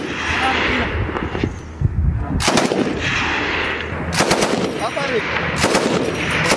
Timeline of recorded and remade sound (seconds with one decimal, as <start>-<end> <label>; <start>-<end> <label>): 0.0-1.7 recorded; 1.7-2.3 remade; 2.3-6.6 recorded